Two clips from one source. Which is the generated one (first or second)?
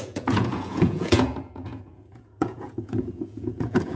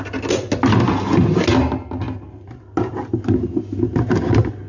first